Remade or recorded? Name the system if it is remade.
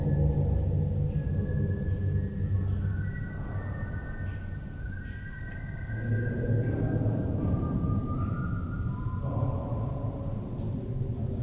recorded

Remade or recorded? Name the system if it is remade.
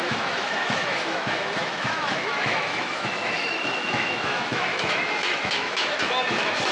remade, autoencoder, DAC-VAE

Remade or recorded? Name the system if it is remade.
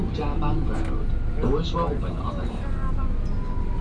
recorded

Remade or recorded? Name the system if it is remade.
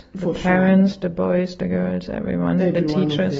recorded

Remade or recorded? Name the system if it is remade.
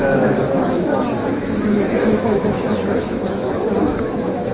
remade, autoencoder, DAC-VAE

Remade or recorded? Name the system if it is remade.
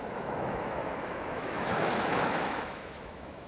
remade, autoencoder, DAC-VAE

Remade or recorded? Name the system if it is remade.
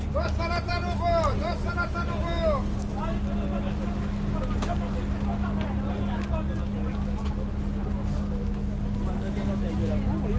recorded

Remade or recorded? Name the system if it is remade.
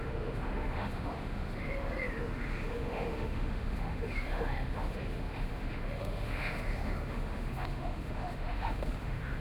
remade, autoencoder, DAC-VAE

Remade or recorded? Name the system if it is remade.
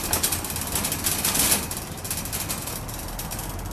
recorded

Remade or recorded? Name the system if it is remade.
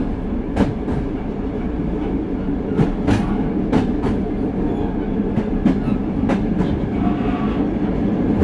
recorded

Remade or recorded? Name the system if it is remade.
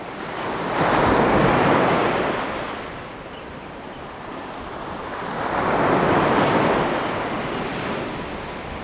recorded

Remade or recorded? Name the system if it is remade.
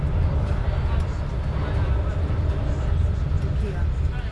recorded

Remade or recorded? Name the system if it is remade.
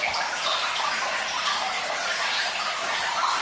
recorded